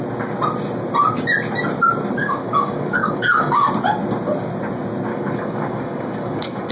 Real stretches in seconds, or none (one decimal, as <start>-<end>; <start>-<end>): 0.0-2.2; 3.7-5.1